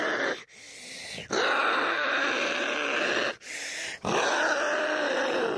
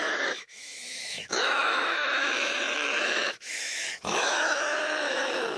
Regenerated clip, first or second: second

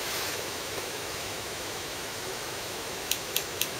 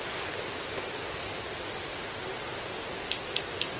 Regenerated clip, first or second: first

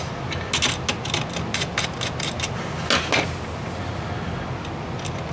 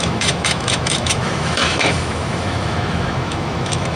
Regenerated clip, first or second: second